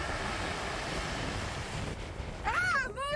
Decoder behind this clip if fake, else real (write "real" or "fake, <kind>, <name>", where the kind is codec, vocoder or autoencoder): real